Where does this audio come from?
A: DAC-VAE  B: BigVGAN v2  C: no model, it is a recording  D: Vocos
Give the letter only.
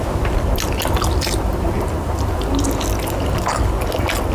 C